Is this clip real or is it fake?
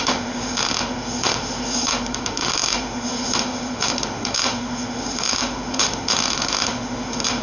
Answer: fake